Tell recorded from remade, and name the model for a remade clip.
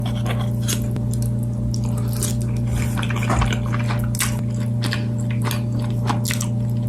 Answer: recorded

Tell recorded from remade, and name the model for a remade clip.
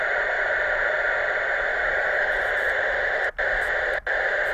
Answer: recorded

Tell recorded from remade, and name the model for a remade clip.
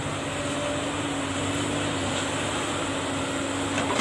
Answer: recorded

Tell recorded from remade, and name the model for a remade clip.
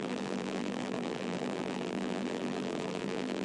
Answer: remade, vocoder, BigVGAN v2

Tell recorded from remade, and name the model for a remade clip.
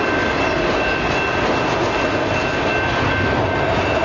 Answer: recorded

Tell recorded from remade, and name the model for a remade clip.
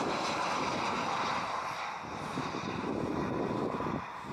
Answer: recorded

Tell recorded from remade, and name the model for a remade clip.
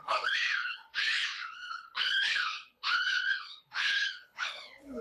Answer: remade, codec, HILCodec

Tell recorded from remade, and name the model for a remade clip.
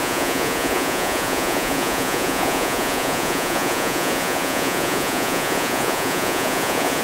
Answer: remade, vocoder, Vocos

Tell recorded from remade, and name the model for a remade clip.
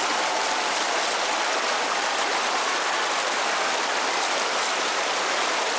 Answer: recorded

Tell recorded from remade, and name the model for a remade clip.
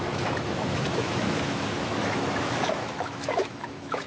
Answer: remade, autoencoder, DAC-VAE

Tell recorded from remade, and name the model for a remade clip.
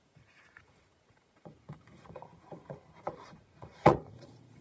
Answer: remade, vocoder, Vocos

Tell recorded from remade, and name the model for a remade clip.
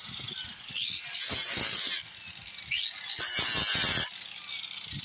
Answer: recorded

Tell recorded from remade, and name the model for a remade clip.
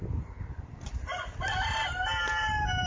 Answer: recorded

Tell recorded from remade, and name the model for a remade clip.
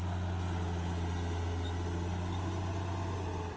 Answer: recorded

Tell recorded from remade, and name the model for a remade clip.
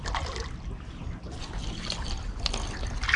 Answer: recorded